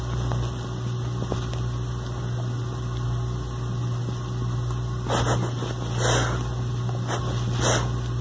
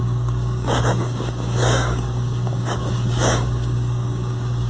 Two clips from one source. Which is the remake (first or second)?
second